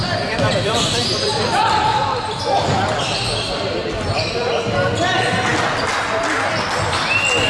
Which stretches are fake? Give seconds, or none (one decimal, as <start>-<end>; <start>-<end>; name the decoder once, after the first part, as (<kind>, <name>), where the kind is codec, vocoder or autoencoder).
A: 0.0-4.5 (vocoder, BigVGAN v2)